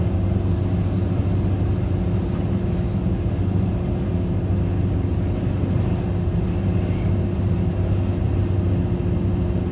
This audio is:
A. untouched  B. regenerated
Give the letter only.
A